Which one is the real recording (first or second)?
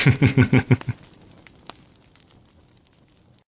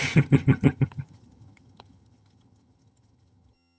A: first